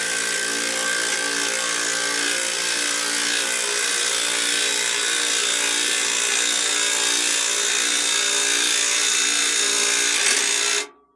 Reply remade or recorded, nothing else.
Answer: recorded